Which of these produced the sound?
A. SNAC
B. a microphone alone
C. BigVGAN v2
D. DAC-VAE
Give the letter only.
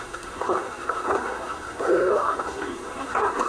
A